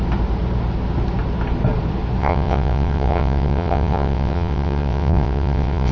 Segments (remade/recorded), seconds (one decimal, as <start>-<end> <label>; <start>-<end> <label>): 0.0-2.2 recorded; 2.2-5.9 remade